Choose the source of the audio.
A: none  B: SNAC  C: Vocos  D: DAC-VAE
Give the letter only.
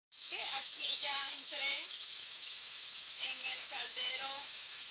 D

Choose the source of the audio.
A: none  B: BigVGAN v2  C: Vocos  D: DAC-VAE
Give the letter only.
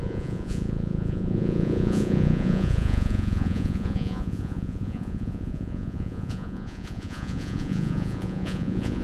C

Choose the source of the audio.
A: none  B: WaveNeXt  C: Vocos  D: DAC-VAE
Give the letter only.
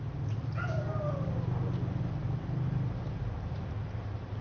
A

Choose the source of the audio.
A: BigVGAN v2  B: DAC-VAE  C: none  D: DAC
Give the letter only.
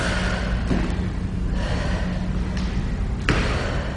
C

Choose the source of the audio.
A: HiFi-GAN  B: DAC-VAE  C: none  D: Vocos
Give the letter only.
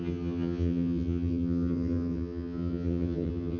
A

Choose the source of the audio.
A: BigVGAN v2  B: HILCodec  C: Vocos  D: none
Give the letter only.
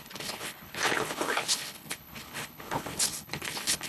B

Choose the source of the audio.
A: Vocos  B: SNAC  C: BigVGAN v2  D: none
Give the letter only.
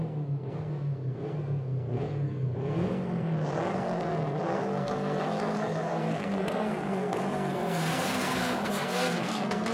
B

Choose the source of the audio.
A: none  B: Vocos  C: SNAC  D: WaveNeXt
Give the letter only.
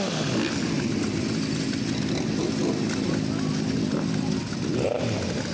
A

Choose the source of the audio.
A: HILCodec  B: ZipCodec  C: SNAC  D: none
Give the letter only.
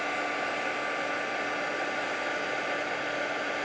D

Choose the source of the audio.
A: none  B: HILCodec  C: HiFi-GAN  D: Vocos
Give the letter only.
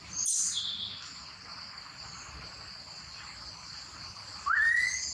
A